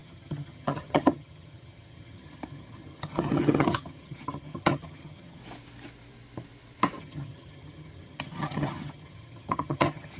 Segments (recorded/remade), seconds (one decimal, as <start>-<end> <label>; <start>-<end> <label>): 0.0-5.4 remade; 5.4-7.0 recorded; 7.0-10.2 remade